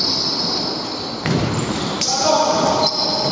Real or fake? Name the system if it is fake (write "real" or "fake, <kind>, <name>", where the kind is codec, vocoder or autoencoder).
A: fake, vocoder, BigVGAN v2